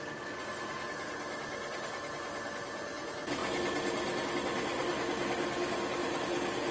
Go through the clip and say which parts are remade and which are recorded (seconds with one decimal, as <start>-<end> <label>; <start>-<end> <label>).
0.0-6.7 recorded